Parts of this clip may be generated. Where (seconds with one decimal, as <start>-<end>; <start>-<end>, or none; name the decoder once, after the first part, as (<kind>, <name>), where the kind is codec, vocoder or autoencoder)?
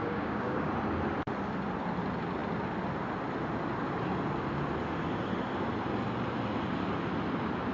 0.0-0.7 (codec, DAC)